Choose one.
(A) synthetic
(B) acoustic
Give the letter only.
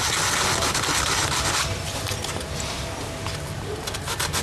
B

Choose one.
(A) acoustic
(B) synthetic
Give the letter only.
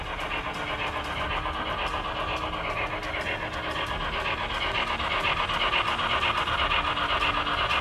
A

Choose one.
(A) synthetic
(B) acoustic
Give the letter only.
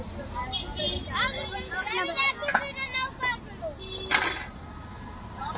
B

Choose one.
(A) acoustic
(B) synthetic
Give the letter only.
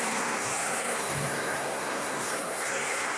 B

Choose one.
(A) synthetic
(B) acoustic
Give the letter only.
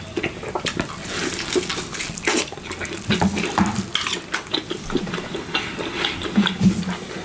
B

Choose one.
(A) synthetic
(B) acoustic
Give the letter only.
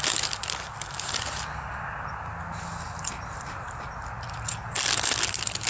B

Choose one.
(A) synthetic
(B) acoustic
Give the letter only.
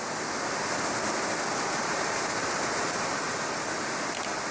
B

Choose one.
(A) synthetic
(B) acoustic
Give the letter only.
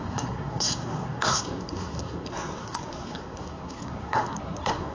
A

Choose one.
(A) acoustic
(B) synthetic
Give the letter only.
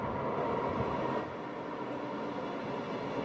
A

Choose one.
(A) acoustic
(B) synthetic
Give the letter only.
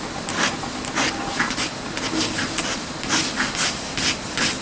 A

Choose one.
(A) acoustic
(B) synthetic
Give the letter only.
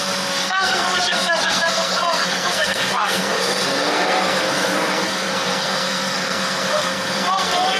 B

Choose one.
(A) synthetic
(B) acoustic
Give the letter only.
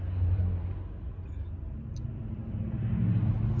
B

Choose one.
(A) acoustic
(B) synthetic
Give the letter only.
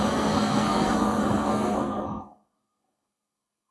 B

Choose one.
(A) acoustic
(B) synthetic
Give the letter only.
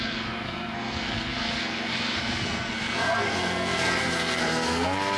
B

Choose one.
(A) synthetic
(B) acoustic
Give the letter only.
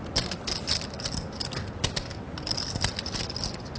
B